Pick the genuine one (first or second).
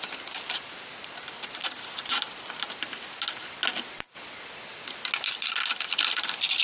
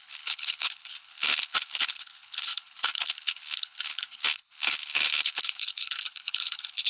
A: first